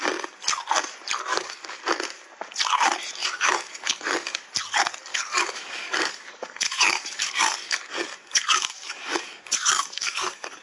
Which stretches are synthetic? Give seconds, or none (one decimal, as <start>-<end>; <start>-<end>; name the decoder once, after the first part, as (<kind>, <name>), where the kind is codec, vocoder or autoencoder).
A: 1.3-1.8 (codec, DAC); 3.2-4.5; 5.1-10.6